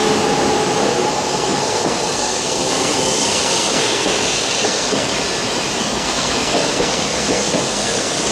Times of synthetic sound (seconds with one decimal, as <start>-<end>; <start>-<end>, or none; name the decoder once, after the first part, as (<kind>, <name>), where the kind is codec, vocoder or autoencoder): 1.1-5.1 (codec, SNAC); 5.8-8.3